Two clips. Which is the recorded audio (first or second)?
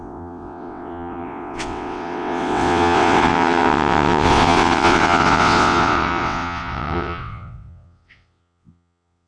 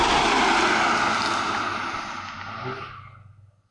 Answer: second